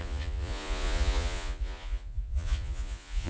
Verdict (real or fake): fake